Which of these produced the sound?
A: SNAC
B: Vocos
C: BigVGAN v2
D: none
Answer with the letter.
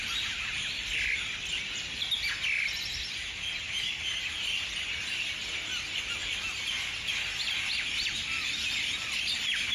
D